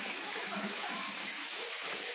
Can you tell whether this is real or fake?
fake